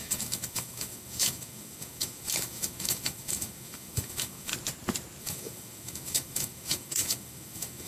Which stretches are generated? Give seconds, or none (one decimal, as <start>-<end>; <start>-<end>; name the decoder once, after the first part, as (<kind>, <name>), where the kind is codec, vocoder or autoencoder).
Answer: 0.0-4.5 (autoencoder, DAC-VAE); 5.2-7.9